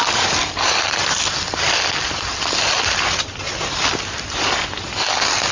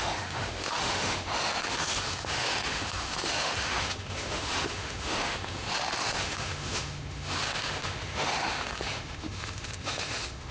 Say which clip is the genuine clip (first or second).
first